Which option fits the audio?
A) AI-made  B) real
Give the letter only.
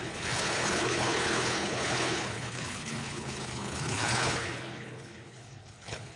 A